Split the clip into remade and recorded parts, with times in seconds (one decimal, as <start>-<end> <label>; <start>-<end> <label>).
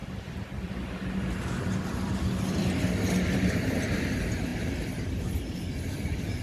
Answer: 0.0-6.4 remade